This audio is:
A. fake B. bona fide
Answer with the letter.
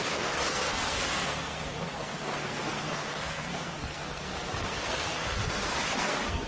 A